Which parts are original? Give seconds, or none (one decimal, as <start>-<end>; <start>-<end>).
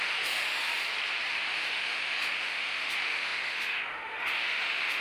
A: 0.6-1.3